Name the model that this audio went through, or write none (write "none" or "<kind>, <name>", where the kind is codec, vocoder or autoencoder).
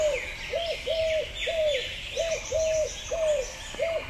none